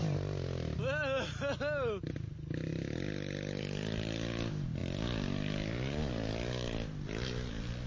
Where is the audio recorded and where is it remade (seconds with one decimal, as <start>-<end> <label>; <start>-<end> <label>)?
0.0-7.9 recorded